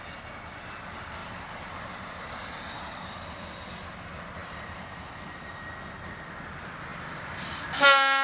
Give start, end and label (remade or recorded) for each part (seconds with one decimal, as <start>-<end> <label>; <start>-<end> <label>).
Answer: 0.0-1.2 recorded; 1.2-2.8 remade; 2.8-6.9 recorded; 6.9-7.6 remade; 7.6-8.2 recorded